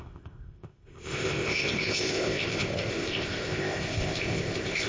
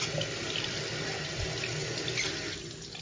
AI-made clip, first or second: first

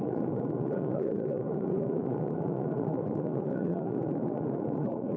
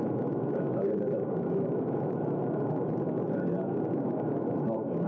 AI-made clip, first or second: first